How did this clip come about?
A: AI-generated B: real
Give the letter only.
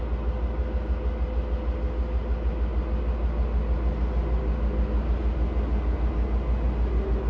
B